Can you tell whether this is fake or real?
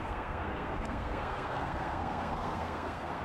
fake